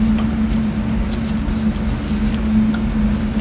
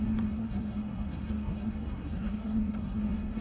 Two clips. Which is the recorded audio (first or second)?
first